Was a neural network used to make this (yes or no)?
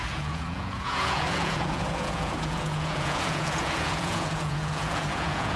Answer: yes